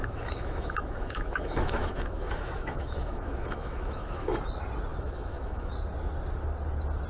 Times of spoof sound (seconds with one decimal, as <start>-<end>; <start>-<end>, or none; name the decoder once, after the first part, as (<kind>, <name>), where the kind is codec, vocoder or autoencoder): 0.0-4.3 (autoencoder, DAC-VAE); 4.9-5.7